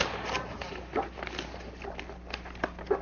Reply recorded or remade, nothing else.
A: recorded